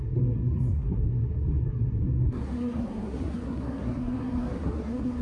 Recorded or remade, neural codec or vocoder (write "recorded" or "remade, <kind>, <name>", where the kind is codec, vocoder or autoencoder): remade, codec, SNAC